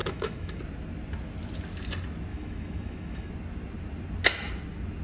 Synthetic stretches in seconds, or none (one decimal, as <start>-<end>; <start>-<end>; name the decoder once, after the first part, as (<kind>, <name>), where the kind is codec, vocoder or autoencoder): 0.0-0.6 (autoencoder, DAC-VAE); 2.3-3.3